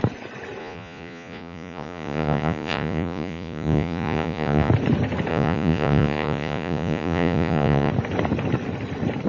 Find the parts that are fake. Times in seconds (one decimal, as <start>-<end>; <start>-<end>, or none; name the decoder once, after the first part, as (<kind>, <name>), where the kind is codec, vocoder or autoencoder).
0.6-4.7 (vocoder, Vocos); 5.3-7.9